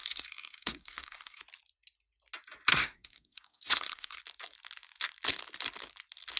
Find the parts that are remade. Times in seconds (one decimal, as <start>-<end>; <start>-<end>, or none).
0.0-1.4; 2.7-4.2